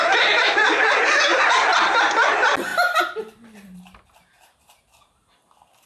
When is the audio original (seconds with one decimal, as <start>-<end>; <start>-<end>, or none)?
0.0-2.7; 4.9-5.9